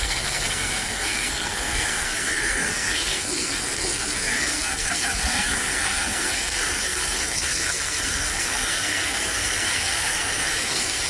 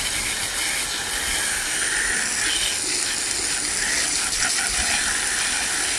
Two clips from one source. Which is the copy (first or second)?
first